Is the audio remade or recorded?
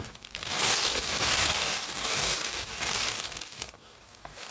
remade